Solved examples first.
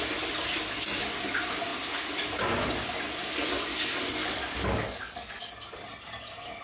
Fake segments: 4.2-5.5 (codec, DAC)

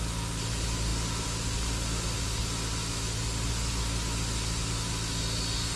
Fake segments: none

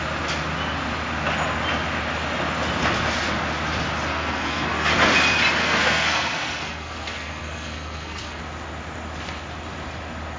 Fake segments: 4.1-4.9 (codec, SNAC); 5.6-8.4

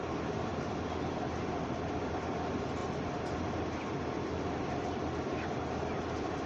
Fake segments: none